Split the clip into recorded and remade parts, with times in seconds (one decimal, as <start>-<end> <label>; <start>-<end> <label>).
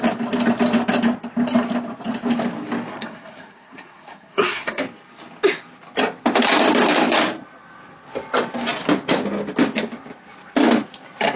0.0-2.9 recorded; 2.9-4.8 remade; 4.8-11.4 recorded